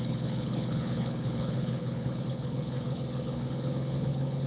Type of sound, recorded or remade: remade